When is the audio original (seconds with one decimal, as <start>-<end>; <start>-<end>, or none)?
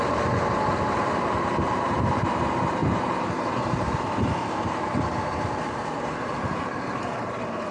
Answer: none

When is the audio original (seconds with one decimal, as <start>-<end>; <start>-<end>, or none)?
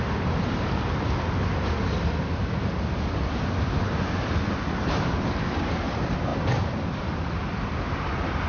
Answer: 0.0-8.5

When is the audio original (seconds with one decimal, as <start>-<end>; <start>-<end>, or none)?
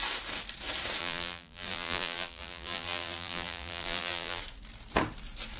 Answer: 0.0-1.0; 4.4-5.6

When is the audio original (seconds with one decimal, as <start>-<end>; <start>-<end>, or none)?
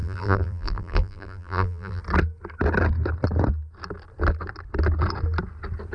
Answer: 2.0-5.9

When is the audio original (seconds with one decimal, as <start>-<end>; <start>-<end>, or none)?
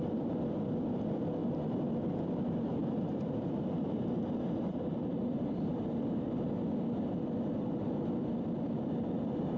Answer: 0.0-2.8; 5.8-9.6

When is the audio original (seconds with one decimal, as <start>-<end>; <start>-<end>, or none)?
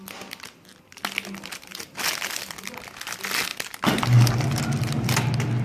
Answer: 0.0-5.6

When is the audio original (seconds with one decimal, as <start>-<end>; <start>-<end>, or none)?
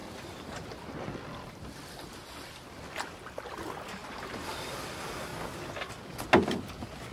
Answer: 0.0-7.1